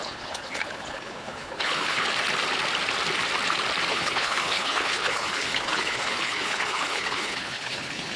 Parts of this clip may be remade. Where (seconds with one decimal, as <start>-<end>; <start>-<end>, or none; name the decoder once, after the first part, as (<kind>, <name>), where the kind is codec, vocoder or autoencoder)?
0.0-2.1 (codec, HILCodec); 3.9-8.2